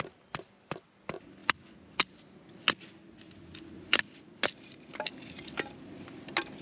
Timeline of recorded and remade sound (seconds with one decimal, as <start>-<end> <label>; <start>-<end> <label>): 0.0-6.6 recorded